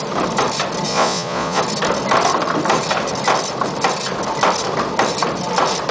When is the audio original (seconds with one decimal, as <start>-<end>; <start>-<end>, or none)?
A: 0.0-0.9; 1.6-5.9